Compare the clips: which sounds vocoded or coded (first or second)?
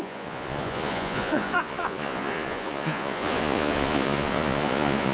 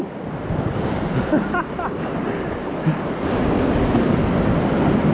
first